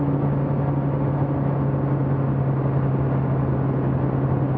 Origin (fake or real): real